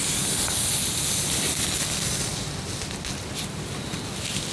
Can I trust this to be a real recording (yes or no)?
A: yes